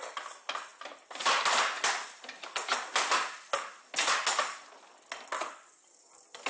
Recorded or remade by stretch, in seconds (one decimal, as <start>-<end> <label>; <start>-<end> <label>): 0.0-6.5 recorded

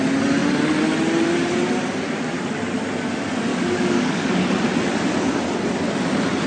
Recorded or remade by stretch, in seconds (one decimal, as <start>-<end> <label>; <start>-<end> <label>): 0.0-3.5 recorded; 3.5-4.4 remade; 4.4-6.5 recorded

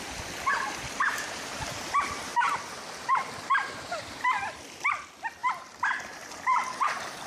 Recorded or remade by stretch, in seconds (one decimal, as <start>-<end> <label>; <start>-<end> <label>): 0.0-7.3 recorded

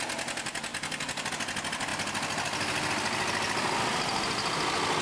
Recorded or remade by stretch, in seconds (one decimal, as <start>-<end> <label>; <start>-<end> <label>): 0.0-0.7 recorded; 0.7-1.3 remade; 1.3-5.0 recorded

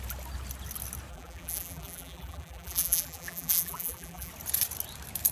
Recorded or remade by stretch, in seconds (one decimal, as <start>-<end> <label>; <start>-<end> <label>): 0.0-1.1 recorded; 1.1-4.3 remade; 4.3-5.3 recorded

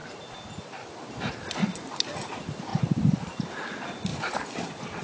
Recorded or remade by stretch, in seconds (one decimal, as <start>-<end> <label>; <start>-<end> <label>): 0.0-2.7 recorded; 2.7-3.4 remade; 3.4-4.1 recorded; 4.1-5.0 remade

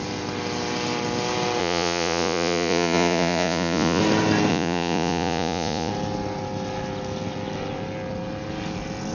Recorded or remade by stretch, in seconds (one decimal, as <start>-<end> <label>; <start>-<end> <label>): 0.0-1.6 recorded; 1.6-4.0 remade; 4.0-4.5 recorded; 4.5-5.9 remade; 5.9-9.1 recorded

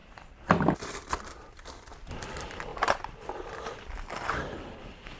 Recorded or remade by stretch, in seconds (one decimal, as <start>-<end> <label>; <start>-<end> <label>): 0.0-1.1 recorded; 1.1-5.2 remade